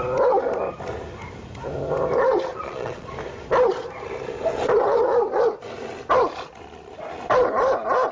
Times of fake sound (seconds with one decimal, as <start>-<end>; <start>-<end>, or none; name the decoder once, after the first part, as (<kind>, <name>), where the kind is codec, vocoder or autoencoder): 2.5-3.1 (vocoder, Vocos)

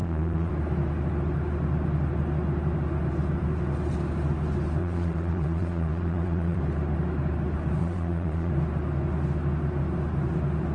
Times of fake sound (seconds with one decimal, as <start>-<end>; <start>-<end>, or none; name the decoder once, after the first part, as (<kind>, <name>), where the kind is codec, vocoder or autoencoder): 0.0-0.5 (vocoder, Vocos); 4.8-6.6; 7.8-8.5